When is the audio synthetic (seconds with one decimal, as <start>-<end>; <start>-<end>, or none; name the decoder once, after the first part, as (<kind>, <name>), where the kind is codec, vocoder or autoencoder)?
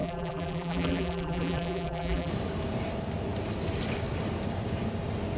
0.0-2.3 (vocoder, BigVGAN v2)